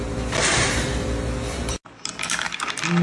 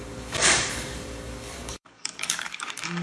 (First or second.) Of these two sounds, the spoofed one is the second